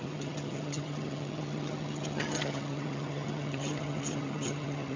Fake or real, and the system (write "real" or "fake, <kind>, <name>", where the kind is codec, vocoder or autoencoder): fake, vocoder, HiFi-GAN